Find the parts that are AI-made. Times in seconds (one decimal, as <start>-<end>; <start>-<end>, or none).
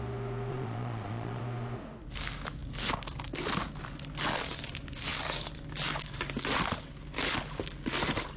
0.5-1.4